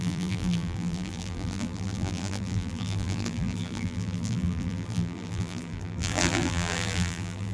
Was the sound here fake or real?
fake